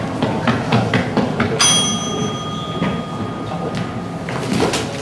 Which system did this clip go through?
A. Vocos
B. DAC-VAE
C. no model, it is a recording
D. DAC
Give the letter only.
C